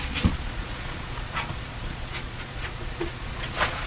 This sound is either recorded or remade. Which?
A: remade